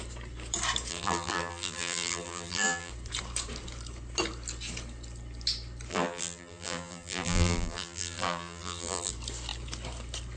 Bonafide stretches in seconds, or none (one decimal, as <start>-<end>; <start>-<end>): 0.0-0.9; 2.9-5.9; 9.1-10.4